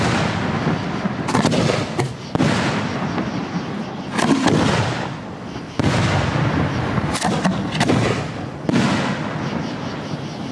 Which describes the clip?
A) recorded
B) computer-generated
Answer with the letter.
A